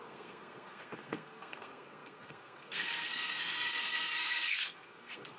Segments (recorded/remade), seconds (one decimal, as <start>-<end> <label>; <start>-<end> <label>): 0.0-5.4 remade